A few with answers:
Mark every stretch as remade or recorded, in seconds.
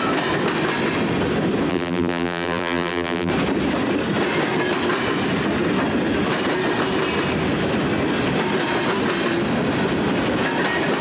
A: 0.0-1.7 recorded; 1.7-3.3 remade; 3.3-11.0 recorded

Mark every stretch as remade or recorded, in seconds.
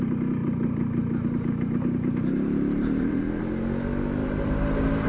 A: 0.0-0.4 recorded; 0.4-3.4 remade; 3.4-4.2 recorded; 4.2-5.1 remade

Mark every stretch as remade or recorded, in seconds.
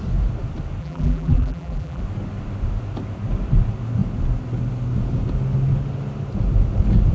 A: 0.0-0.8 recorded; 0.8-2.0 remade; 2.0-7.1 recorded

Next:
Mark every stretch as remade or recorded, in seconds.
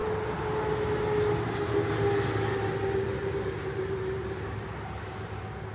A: 0.0-3.1 recorded; 3.1-5.0 remade; 5.0-5.7 recorded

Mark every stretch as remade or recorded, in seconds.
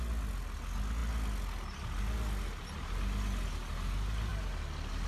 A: 0.0-5.1 recorded